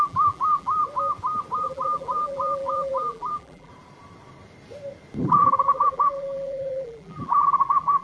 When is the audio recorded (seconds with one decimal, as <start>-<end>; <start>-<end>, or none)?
0.8-1.6; 3.7-5.2